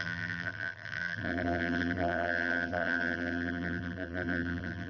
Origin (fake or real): fake